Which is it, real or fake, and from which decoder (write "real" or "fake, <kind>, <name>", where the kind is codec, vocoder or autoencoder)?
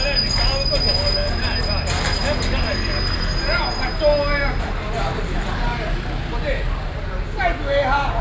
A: real